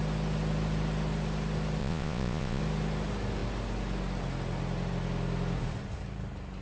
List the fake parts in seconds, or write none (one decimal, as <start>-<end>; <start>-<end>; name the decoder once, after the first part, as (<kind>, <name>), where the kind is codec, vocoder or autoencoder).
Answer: 1.8-2.6 (vocoder, Vocos)